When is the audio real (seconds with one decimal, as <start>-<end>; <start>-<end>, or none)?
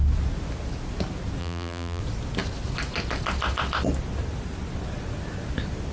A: 0.0-1.4; 2.0-5.9